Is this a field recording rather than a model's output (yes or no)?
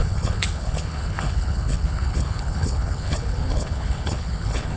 no